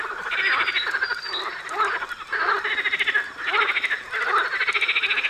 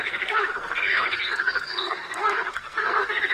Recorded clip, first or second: first